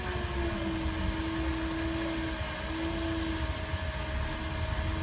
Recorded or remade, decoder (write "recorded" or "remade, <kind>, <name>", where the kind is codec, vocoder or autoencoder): recorded